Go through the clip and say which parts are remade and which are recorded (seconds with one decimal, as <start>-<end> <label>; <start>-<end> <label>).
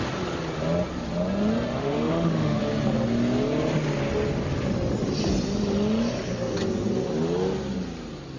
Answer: 0.0-1.8 recorded; 1.8-2.6 remade; 2.6-8.4 recorded